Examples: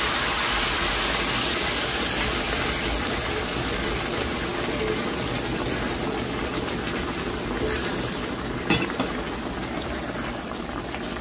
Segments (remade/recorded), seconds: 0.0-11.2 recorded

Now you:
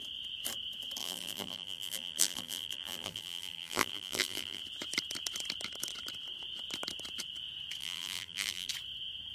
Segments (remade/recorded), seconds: 0.0-1.0 recorded; 1.0-4.6 remade; 4.6-7.8 recorded; 7.8-8.7 remade; 8.7-9.3 recorded